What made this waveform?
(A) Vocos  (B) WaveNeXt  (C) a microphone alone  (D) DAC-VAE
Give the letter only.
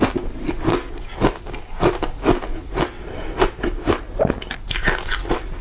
C